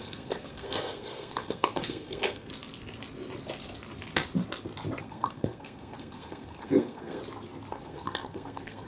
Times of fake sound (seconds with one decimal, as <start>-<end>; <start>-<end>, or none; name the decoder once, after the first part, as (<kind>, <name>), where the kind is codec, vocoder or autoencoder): 0.0-2.5 (codec, SNAC); 5.0-7.2; 7.7-8.9